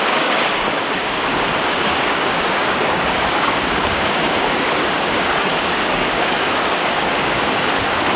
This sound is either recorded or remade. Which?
remade